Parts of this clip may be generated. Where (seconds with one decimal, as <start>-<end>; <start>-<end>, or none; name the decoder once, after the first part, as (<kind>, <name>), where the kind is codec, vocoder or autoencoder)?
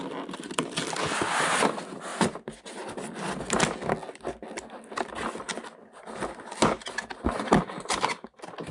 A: none